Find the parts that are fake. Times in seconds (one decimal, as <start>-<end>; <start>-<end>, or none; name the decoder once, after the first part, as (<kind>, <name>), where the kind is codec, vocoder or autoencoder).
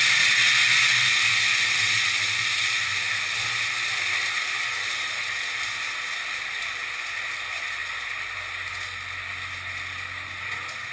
none